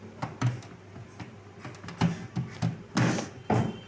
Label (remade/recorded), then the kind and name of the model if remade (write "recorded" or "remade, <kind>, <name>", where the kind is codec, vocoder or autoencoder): recorded